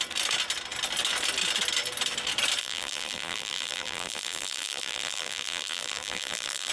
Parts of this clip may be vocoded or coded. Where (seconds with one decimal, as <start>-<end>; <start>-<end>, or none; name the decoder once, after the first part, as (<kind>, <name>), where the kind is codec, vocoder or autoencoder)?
2.6-6.7 (vocoder, BigVGAN v2)